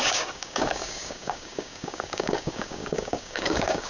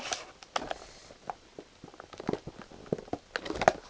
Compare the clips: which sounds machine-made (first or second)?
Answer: first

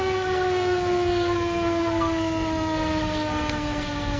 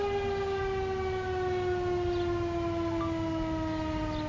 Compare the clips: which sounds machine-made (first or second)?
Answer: first